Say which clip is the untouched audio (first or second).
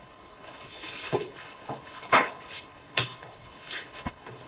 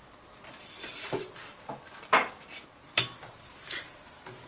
second